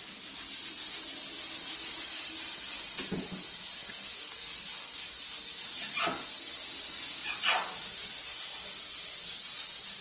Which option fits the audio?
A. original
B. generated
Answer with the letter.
A